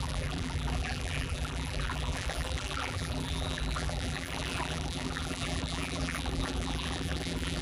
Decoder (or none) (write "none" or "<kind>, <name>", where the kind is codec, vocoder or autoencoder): vocoder, BigVGAN v2